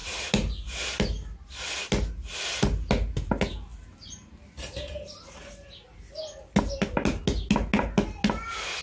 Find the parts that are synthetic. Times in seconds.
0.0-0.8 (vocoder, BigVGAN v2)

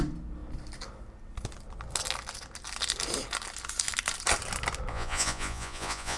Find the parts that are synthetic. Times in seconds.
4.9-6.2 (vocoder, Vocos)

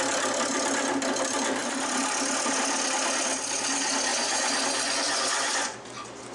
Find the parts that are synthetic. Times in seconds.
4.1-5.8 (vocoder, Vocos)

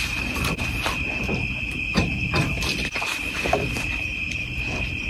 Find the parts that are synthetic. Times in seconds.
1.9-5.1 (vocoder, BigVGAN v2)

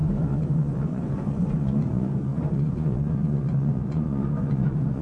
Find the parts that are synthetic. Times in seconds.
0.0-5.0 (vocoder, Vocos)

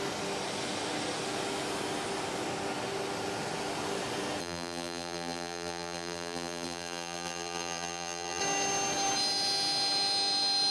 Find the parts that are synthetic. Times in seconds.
4.4-8.4 (vocoder, BigVGAN v2)

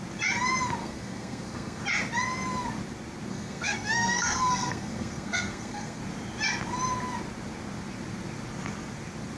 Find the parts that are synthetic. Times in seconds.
0.8-1.8 (codec, SNAC); 3.3-6.0

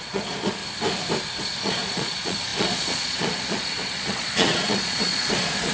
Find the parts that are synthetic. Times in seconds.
0.0-0.6 (vocoder, Vocos); 1.4-5.7